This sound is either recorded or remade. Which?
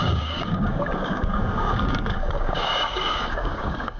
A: remade